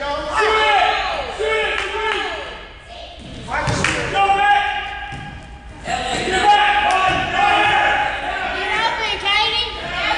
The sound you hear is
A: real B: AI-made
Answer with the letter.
A